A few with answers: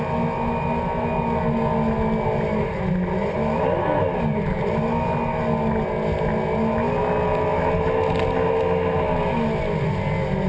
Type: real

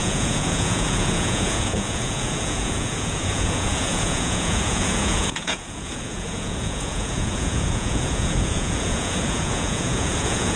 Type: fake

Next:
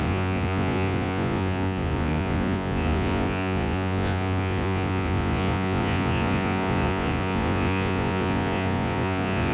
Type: fake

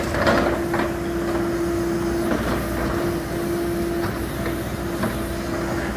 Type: real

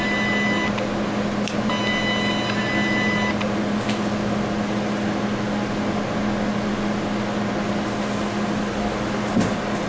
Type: real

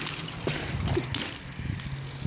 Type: real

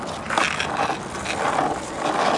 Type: real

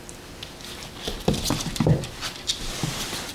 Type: real